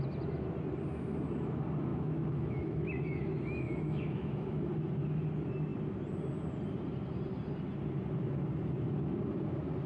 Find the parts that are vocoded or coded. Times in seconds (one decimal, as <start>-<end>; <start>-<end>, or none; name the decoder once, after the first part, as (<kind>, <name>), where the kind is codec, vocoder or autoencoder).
1.9-4.7 (autoencoder, DAC-VAE)